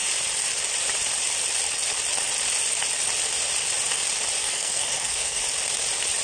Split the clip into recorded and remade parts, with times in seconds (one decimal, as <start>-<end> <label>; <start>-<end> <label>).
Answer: 0.0-4.4 recorded; 4.4-5.4 remade; 5.4-6.2 recorded